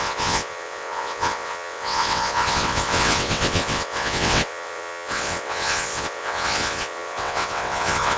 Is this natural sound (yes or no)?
no